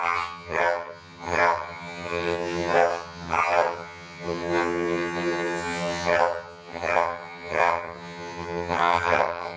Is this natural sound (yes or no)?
no